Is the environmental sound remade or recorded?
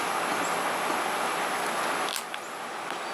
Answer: recorded